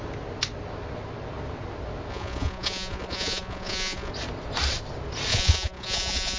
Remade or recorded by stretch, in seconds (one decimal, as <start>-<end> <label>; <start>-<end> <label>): 0.0-2.1 recorded; 2.1-4.1 remade; 4.1-5.3 recorded; 5.3-6.4 remade